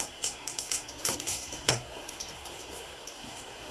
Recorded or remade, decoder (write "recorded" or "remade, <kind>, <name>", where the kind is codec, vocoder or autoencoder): remade, codec, SNAC